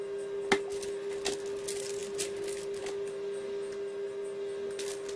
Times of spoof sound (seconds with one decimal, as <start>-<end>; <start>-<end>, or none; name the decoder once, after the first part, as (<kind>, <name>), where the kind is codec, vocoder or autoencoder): none